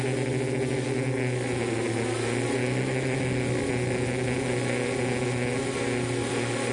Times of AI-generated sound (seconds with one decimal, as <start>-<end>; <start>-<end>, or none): 2.6-3.4